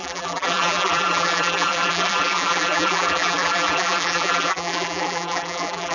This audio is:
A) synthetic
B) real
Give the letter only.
A